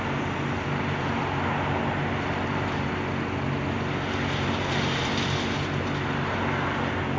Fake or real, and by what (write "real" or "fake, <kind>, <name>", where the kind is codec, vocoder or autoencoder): real